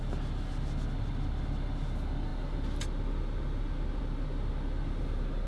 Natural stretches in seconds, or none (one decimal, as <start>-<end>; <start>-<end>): 0.0-5.5

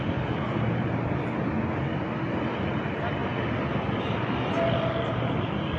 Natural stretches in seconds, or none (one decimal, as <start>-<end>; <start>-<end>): 0.0-5.8

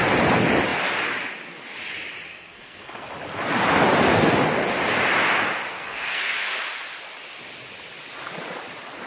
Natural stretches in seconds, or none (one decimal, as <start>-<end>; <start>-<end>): 0.0-2.3; 3.1-5.7; 6.6-9.1

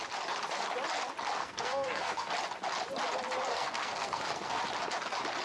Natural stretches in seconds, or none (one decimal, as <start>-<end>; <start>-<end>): 0.0-1.4; 2.3-3.5; 4.6-5.4

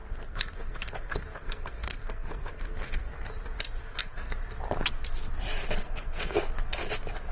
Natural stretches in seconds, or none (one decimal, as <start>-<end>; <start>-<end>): 3.3-3.8; 4.3-5.8; 6.6-7.3